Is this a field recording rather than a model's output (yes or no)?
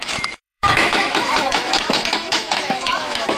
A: no